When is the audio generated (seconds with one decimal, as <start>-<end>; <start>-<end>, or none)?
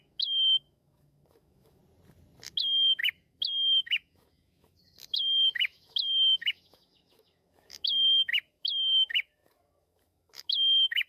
0.0-1.8; 2.6-11.1